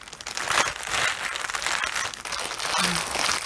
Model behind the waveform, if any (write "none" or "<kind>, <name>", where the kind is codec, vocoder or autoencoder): none